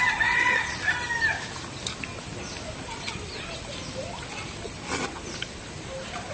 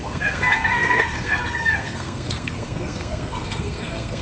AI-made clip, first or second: second